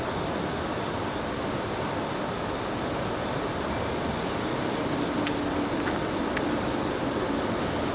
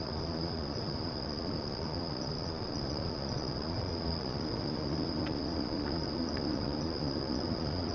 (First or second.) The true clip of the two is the first